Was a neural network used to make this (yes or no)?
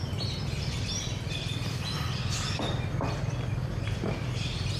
no